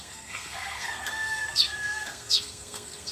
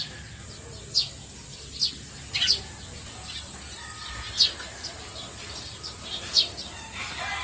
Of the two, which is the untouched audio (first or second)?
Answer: second